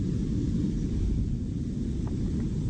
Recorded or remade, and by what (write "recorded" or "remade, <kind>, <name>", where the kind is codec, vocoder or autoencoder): recorded